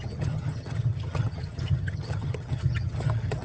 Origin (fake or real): fake